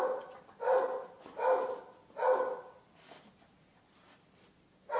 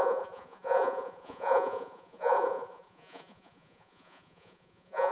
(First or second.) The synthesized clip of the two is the second